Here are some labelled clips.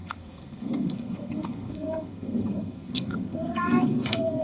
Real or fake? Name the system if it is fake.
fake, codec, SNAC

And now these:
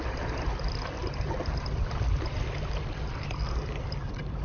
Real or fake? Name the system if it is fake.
real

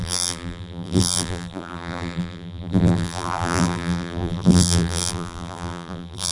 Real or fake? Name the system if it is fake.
fake, vocoder, BigVGAN v2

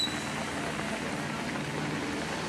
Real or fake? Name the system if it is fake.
real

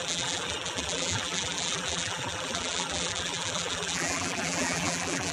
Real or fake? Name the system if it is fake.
fake, vocoder, BigVGAN v2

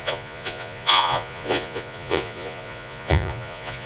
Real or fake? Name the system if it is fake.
fake, vocoder, Vocos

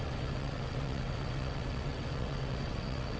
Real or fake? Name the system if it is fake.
fake, vocoder, WaveNeXt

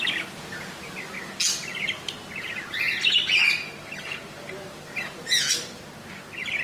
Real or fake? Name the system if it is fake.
real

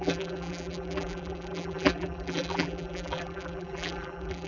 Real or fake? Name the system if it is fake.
fake, vocoder, BigVGAN v2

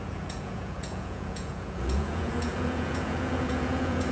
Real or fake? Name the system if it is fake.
fake, vocoder, Vocos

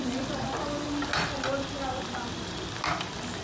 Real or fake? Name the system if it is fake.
real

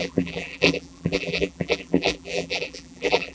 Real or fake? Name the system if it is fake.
fake, vocoder, BigVGAN v2